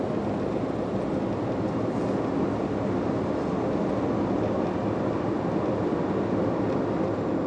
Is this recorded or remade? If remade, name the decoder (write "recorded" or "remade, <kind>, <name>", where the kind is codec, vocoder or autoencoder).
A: recorded